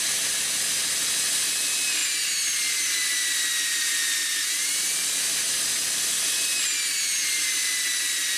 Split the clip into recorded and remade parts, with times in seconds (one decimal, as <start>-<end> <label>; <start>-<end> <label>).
0.0-8.4 recorded